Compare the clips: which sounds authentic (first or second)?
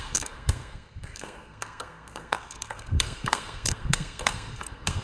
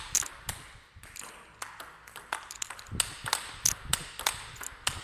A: second